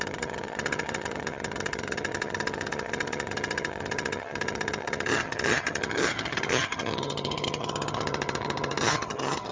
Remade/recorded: remade